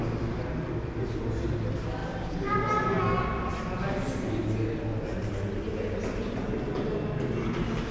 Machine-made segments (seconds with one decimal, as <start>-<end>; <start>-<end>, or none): none